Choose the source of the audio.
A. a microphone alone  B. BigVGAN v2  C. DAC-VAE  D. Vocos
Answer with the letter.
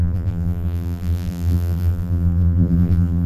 B